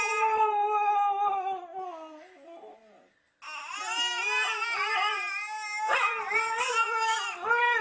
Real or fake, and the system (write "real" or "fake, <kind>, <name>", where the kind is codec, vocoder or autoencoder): real